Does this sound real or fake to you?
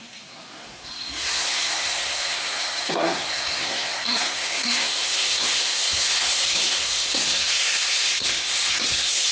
fake